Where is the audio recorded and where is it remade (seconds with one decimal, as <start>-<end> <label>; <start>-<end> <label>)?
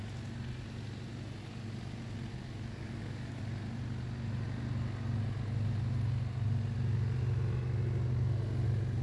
0.0-2.4 recorded; 2.4-3.4 remade; 3.4-9.0 recorded